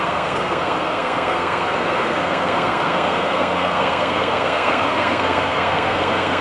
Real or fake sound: fake